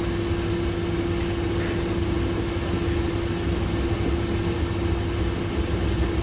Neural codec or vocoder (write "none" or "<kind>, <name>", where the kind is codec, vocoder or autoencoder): none